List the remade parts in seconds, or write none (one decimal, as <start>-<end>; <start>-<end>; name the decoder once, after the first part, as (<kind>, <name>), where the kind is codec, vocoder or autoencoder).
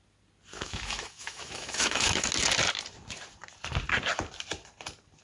0.5-2.3 (autoencoder, DAC-VAE)